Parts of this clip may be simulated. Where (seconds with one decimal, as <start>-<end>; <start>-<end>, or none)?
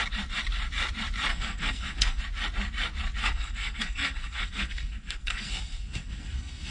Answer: 1.3-2.2; 3.2-6.7